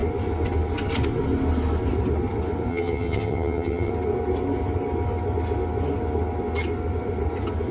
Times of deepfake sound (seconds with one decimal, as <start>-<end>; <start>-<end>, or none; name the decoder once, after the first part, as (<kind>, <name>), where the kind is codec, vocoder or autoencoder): 2.7-3.9 (vocoder, HiFi-GAN)